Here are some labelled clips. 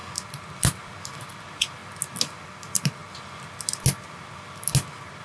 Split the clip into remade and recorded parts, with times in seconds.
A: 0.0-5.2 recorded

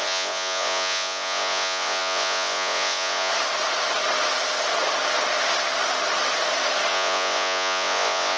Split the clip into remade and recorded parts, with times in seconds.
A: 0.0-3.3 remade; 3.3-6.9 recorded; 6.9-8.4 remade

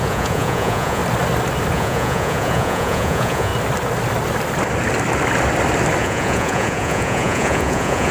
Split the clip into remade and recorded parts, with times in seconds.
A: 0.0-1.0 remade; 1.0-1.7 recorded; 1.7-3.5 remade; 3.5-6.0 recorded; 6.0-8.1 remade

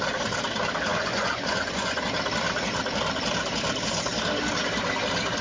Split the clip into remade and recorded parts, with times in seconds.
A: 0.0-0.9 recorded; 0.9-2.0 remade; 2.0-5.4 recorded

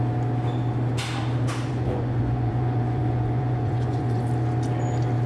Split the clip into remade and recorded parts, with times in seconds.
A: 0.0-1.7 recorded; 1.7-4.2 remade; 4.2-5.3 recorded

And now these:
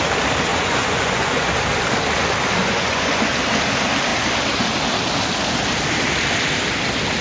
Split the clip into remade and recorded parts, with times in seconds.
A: 0.0-0.5 recorded; 0.5-1.5 remade; 1.5-2.6 recorded; 2.6-3.3 remade; 3.3-7.2 recorded